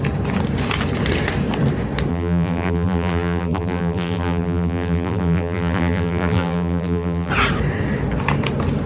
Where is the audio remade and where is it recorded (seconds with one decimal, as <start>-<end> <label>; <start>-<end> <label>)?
0.0-2.1 recorded; 2.1-7.3 remade; 7.3-8.9 recorded

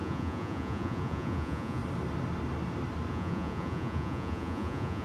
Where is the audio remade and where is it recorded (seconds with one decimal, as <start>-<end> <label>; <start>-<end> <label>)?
0.0-1.8 remade; 1.8-3.1 recorded; 3.1-5.0 remade

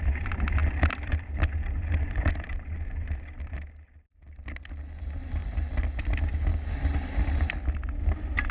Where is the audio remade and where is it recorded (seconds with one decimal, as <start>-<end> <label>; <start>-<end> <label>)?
0.0-0.6 recorded; 0.6-2.2 remade; 2.2-5.4 recorded; 5.4-6.1 remade; 6.1-8.5 recorded

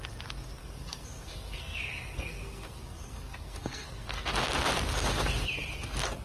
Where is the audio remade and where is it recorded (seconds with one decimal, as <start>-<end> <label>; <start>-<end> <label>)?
0.0-0.6 recorded; 0.6-4.3 remade; 4.3-6.2 recorded

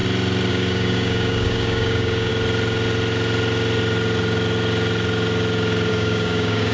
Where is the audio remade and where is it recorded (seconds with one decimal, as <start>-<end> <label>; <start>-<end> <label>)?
0.0-0.5 recorded; 0.5-2.3 remade; 2.3-5.9 recorded; 5.9-6.7 remade

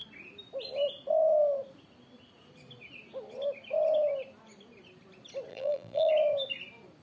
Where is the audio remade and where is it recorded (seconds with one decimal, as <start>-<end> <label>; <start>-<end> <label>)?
0.0-5.5 recorded; 5.5-6.1 remade; 6.1-7.0 recorded